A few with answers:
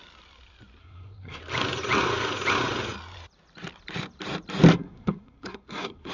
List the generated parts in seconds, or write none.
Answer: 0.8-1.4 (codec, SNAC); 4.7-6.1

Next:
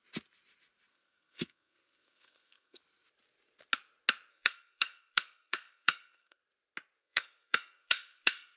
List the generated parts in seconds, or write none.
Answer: 0.9-2.8 (codec, SNAC); 4.3-6.4; 7.0-8.6

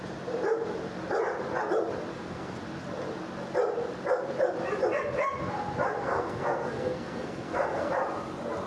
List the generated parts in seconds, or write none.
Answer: 2.1-2.6 (codec, SNAC); 6.0-7.9

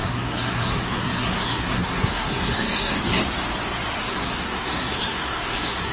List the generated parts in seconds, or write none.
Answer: 0.0-3.0 (codec, SNAC); 4.0-5.9